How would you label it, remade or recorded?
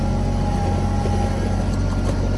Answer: recorded